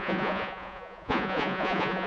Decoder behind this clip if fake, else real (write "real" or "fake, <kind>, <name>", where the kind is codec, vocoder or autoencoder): fake, vocoder, Vocos